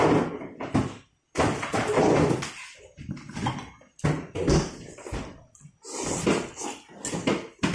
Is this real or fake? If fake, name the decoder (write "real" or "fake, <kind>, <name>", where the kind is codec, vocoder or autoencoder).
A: real